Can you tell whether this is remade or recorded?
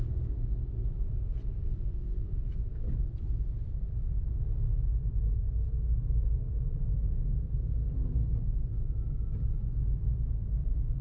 recorded